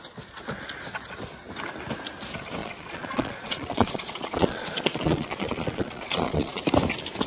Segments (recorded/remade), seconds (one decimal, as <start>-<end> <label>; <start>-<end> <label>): 0.0-2.6 recorded; 2.6-6.6 remade; 6.6-7.3 recorded